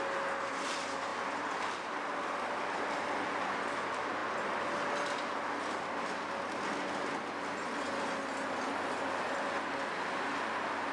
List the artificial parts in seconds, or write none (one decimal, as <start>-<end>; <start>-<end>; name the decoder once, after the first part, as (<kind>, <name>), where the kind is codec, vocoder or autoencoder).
none